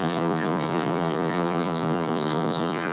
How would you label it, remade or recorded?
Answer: remade